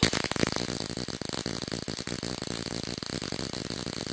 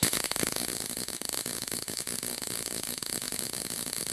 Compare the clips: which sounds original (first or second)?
first